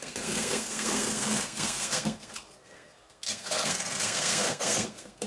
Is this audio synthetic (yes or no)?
yes